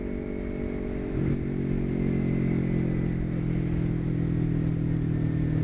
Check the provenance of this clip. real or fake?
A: real